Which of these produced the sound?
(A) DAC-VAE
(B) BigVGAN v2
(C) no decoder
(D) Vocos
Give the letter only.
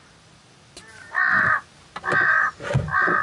C